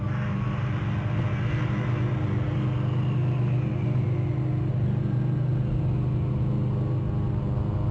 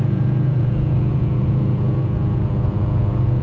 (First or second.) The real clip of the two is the first